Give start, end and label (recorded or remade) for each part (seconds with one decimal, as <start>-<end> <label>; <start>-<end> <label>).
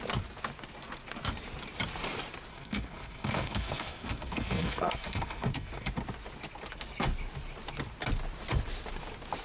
0.0-2.5 recorded; 2.5-5.9 remade; 5.9-9.4 recorded